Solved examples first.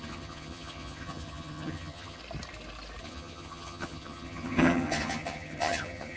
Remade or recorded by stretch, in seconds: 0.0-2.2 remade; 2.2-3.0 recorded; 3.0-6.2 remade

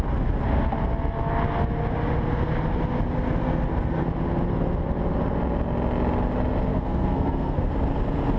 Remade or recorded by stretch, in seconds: 0.0-6.7 recorded; 6.7-7.7 remade; 7.7-8.4 recorded

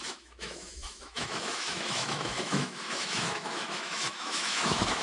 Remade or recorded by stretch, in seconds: 0.0-5.0 remade